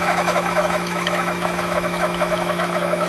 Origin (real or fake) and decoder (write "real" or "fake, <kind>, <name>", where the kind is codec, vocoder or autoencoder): fake, autoencoder, DAC-VAE